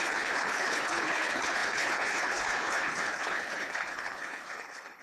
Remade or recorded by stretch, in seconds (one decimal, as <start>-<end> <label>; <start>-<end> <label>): 0.0-5.0 remade